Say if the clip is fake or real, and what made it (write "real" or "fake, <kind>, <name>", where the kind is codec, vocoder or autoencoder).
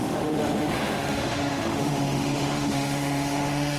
fake, autoencoder, DAC-VAE